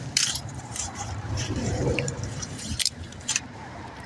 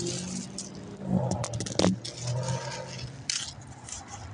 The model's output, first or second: first